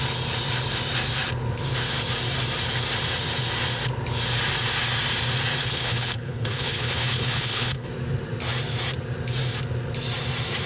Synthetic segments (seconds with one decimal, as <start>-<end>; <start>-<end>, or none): 5.6-7.9